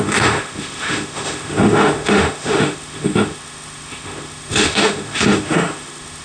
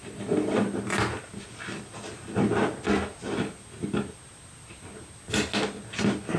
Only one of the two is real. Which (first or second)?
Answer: second